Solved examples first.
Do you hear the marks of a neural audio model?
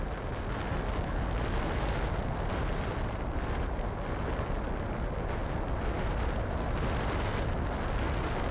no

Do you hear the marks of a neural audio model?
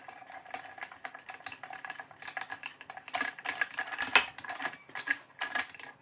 no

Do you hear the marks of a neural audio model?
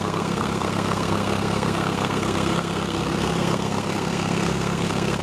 yes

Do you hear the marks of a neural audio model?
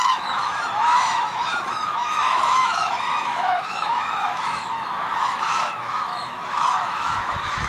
yes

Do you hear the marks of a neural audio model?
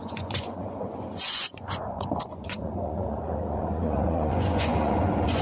yes